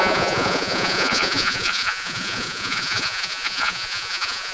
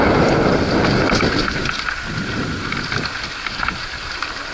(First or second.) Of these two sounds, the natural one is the second